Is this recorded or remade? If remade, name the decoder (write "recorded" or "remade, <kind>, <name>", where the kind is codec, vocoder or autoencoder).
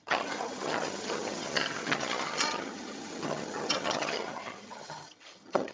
remade, vocoder, HiFi-GAN